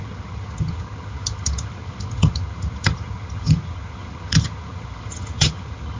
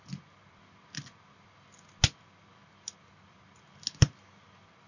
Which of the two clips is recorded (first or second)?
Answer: second